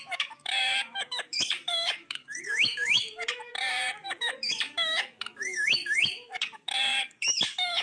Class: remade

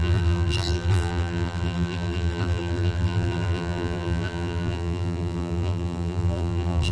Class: remade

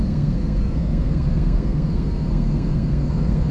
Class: remade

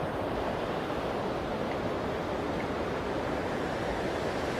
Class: recorded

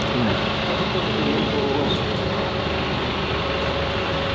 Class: recorded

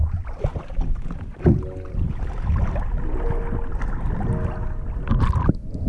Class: recorded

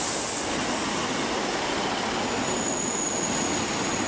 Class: recorded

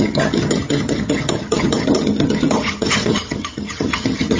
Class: remade